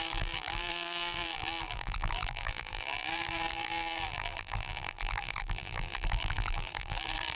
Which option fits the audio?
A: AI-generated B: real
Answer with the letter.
A